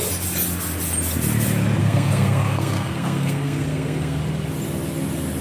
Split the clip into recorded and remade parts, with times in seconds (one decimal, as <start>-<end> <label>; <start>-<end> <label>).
0.0-1.8 recorded; 1.8-4.2 remade; 4.2-5.4 recorded